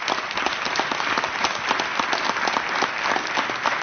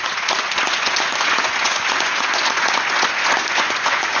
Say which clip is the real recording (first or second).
first